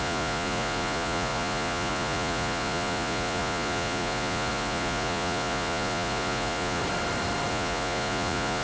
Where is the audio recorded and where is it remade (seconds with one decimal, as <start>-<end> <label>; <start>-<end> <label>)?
0.0-6.8 remade; 6.8-7.5 recorded; 7.5-8.6 remade